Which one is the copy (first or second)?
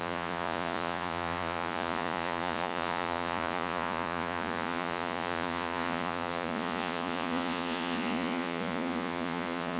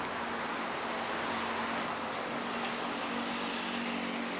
first